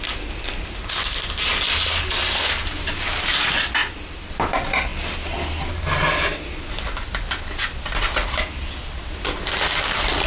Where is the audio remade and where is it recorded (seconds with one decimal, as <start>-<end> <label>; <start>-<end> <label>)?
0.0-10.3 recorded